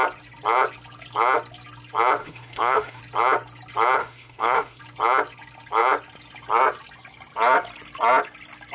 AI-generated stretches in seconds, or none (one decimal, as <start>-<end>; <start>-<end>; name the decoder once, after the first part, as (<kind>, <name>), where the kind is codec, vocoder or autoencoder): 2.2-3.0 (autoencoder, DAC-VAE); 4.0-4.8